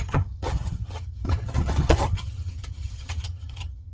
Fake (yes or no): yes